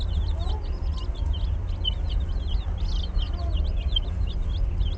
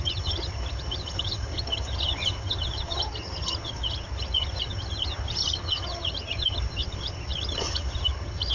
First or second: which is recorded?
first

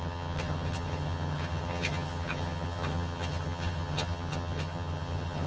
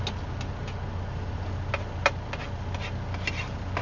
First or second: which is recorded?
second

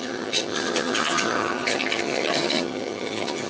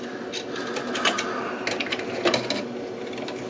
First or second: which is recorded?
second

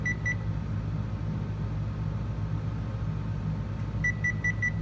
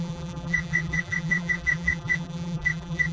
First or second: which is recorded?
first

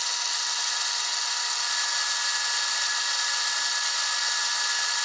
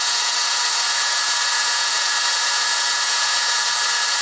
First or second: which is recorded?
first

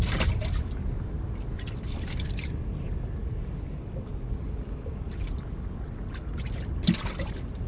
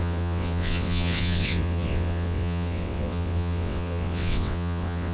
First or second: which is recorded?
first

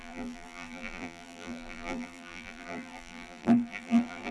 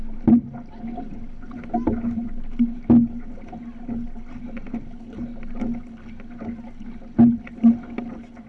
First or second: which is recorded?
second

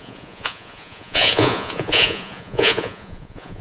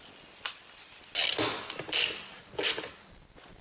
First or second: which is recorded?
second